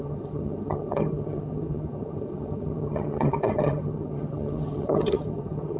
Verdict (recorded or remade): remade